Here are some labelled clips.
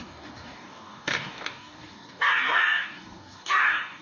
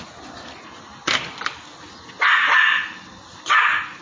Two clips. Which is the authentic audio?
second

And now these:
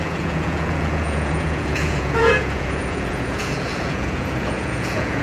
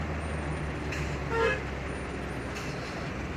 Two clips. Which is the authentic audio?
second